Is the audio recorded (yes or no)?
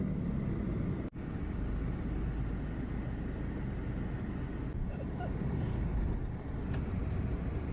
yes